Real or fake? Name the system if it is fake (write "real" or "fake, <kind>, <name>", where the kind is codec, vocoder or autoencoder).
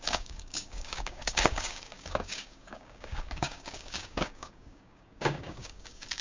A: fake, codec, DAC